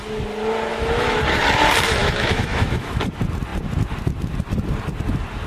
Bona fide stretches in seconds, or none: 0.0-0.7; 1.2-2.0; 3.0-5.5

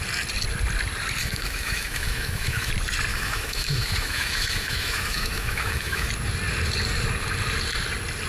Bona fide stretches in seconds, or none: 0.0-1.2; 2.7-3.1; 6.1-8.3